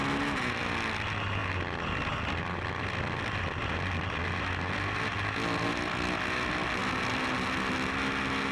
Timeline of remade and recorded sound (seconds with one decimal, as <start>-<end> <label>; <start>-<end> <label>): 0.0-8.5 recorded